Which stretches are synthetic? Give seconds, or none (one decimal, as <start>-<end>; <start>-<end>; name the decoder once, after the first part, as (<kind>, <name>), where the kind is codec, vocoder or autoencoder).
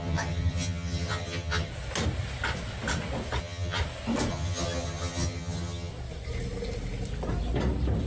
0.0-1.7 (vocoder, HiFi-GAN); 3.4-3.8; 4.3-5.9